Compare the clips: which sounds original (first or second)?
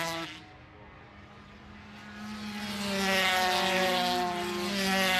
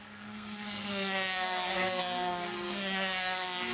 first